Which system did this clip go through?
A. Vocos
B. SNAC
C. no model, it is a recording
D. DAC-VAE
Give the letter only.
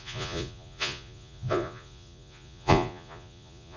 A